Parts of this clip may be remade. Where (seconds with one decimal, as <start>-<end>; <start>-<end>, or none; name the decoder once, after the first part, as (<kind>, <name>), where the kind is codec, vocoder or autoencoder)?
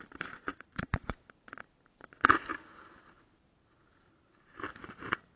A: 0.5-1.0 (vocoder, BigVGAN v2); 2.5-3.0